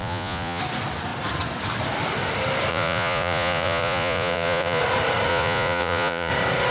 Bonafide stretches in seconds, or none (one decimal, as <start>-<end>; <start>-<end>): 0.6-2.7; 4.8-5.3; 6.3-6.7